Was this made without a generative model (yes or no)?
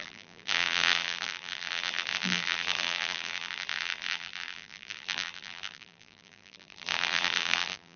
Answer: no